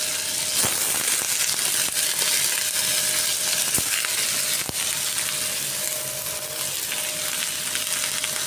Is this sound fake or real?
real